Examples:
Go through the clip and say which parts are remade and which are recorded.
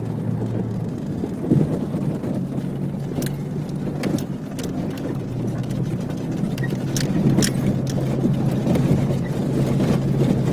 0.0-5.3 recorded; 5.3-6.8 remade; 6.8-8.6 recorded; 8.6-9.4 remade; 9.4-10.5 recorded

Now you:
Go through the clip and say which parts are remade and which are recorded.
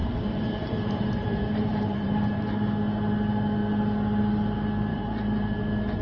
0.0-2.4 remade; 2.4-4.9 recorded; 4.9-5.6 remade; 5.6-6.0 recorded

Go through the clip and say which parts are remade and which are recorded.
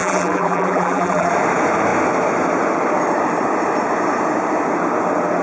0.0-1.3 remade; 1.3-5.4 recorded